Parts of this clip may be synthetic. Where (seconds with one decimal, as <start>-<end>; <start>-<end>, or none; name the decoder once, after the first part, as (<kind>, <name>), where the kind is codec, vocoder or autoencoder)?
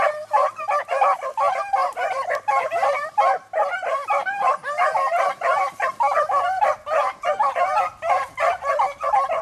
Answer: 1.8-5.4 (vocoder, BigVGAN v2)